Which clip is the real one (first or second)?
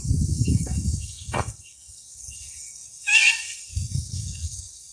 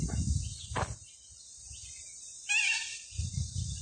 second